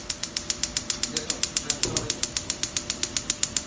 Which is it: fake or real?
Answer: real